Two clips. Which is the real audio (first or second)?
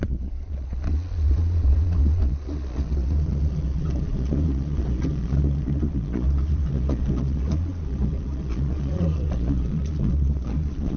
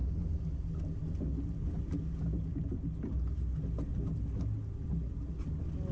second